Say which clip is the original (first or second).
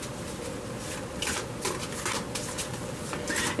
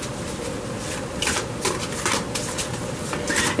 first